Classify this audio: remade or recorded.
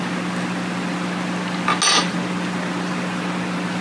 recorded